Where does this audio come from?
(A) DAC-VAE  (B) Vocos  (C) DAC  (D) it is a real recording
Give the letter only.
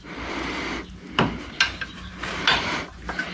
D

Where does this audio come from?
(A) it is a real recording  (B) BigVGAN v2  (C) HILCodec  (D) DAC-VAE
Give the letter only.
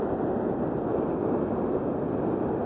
A